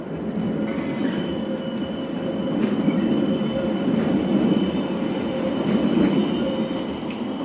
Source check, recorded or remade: recorded